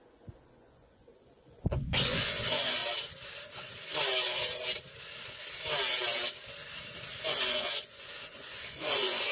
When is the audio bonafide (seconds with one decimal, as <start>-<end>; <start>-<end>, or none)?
2.8-7.2